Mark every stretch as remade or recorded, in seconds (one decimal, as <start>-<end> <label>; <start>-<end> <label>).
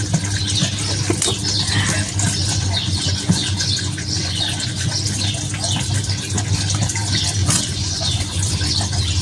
0.0-2.4 recorded; 2.4-4.9 remade; 4.9-7.4 recorded; 7.4-8.5 remade; 8.5-9.2 recorded